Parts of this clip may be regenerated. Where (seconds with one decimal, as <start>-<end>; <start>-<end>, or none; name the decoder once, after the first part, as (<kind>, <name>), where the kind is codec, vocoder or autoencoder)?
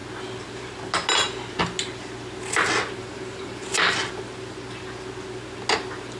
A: 3.0-4.2 (vocoder, BigVGAN v2)